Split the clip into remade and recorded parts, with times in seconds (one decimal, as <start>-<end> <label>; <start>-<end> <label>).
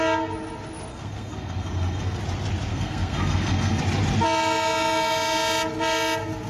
0.0-0.9 recorded; 0.9-2.2 remade; 2.2-2.7 recorded; 2.7-3.8 remade; 3.8-6.5 recorded